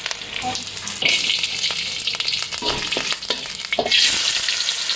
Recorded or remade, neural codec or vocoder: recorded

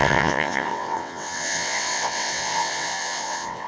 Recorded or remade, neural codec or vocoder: remade, vocoder, WaveNeXt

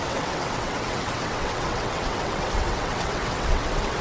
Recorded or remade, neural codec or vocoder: remade, vocoder, WaveNeXt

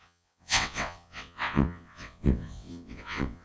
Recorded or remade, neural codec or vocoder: remade, vocoder, WaveNeXt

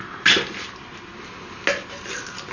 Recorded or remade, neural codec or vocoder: recorded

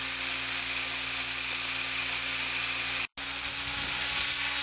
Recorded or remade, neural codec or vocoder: recorded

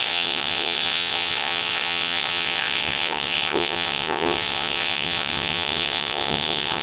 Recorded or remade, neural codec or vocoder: remade, vocoder, WaveNeXt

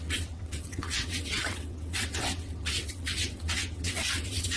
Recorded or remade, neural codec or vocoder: remade, vocoder, WaveNeXt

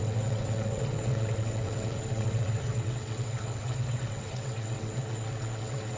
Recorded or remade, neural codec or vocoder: remade, vocoder, WaveNeXt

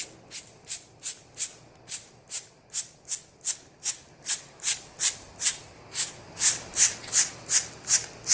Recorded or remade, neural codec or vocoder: recorded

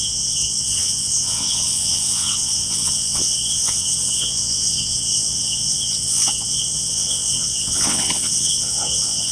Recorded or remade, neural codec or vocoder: remade, vocoder, WaveNeXt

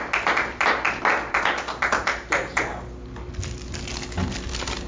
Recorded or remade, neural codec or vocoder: recorded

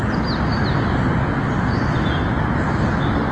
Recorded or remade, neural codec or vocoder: recorded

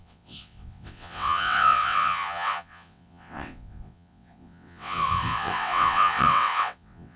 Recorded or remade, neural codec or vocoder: remade, vocoder, WaveNeXt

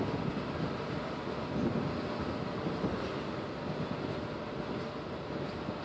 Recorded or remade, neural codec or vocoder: recorded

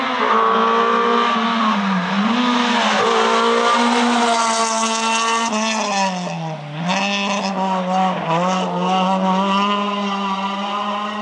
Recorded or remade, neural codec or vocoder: recorded